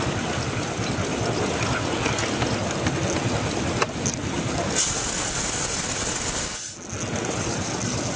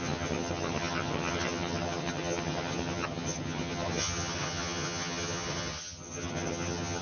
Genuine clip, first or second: first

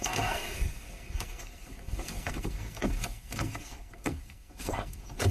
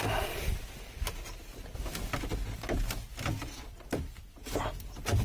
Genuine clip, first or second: second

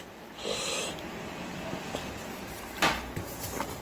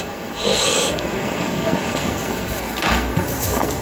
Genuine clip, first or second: first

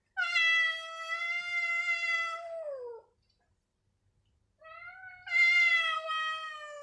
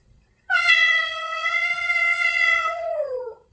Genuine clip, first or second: first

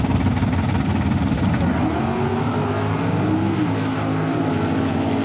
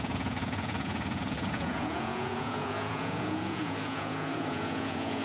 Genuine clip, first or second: first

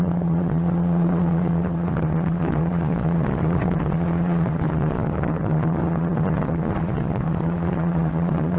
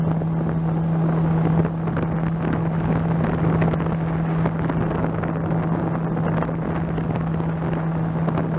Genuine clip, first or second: second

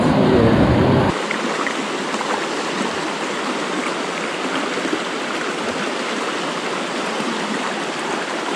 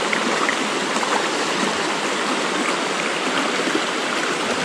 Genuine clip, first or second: first